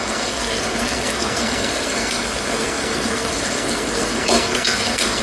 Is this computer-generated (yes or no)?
yes